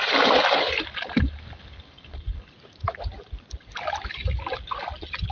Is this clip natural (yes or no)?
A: yes